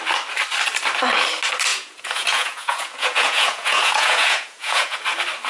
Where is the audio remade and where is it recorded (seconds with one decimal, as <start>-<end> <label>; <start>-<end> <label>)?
0.0-1.7 recorded; 1.7-5.0 remade; 5.0-5.5 recorded